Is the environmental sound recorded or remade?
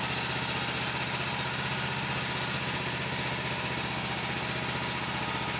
recorded